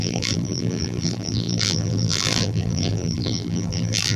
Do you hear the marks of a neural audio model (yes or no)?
yes